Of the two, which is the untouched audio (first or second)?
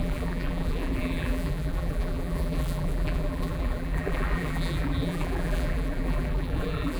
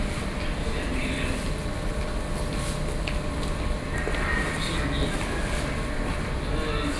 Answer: second